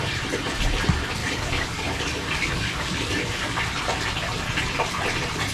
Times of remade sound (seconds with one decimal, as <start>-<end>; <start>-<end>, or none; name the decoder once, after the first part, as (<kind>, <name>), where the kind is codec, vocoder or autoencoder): 1.2-3.6 (codec, DAC)